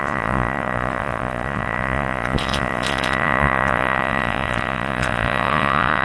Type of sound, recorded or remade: remade